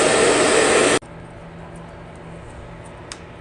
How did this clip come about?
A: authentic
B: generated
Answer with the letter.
A